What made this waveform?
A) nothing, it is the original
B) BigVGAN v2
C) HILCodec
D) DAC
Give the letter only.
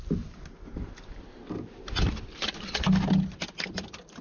A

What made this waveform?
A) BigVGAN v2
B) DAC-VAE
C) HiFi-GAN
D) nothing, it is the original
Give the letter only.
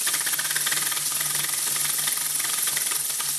D